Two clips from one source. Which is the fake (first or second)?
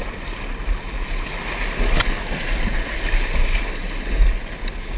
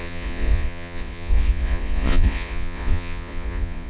second